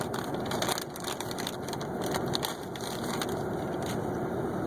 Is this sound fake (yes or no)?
no